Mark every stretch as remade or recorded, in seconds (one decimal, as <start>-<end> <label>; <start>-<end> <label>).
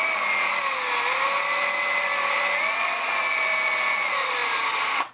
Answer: 0.0-5.1 recorded